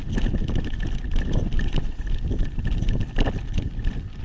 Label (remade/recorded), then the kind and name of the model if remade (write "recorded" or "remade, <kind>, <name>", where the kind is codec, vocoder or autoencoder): recorded